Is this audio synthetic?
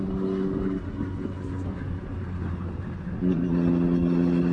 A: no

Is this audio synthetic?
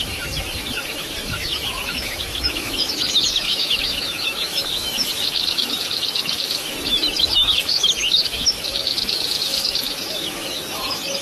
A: yes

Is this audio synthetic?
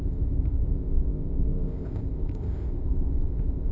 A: yes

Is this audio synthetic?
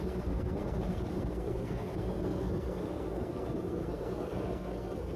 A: yes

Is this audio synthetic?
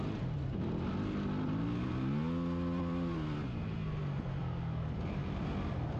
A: no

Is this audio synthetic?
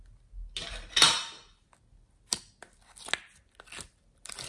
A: no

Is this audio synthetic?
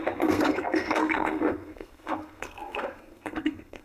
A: yes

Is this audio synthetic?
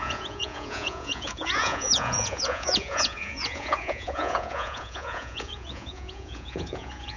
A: yes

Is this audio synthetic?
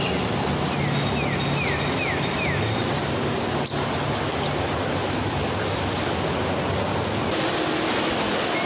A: no